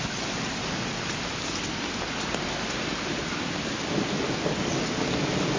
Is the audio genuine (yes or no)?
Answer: yes